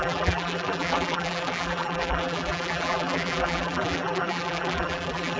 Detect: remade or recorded remade